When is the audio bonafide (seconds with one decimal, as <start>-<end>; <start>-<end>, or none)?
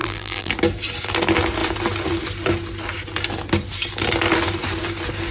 0.5-5.3